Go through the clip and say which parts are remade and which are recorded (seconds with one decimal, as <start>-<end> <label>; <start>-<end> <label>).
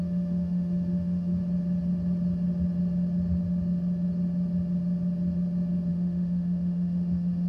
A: 0.0-1.4 remade; 1.4-5.9 recorded; 5.9-7.5 remade